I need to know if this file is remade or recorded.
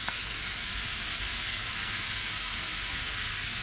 remade